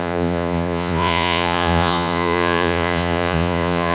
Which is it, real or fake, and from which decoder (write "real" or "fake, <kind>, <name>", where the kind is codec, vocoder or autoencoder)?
fake, vocoder, Vocos